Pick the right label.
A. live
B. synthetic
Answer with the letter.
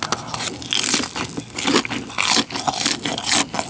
A